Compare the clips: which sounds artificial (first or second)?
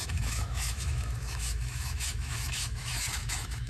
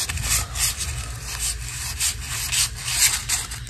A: first